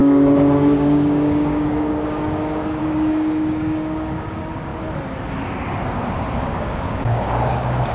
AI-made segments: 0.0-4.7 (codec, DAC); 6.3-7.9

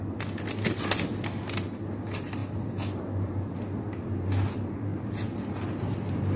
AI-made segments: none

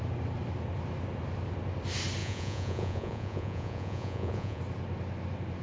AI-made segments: 2.2-4.6 (vocoder, Vocos)

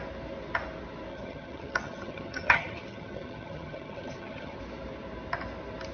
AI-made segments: 1.1-4.6 (vocoder, HiFi-GAN)

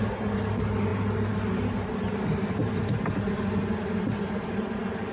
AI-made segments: none

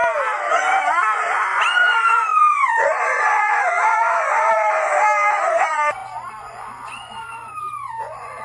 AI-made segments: 0.5-4.9 (vocoder, Vocos); 5.5-8.4

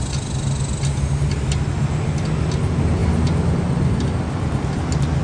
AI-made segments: none

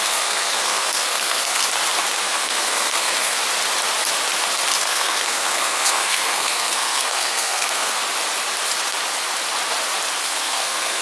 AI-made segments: 0.0-1.6 (codec, SNAC); 2.2-3.4; 4.8-8.0; 10.2-11.0